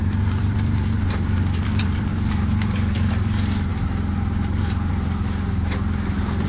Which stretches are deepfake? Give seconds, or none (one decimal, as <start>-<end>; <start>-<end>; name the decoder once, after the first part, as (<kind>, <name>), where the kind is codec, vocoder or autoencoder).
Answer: 0.0-6.5 (vocoder, BigVGAN v2)